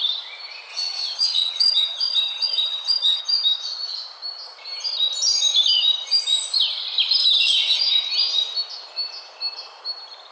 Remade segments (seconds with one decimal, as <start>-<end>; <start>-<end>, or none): 0.7-3.2; 7.2-7.8

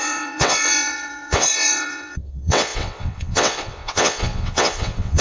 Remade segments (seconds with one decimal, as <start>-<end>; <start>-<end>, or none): 0.0-5.2

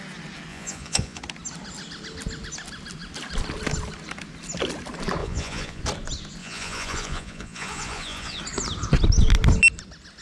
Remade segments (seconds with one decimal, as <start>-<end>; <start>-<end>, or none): 0.5-1.2; 5.2-5.8; 6.4-8.4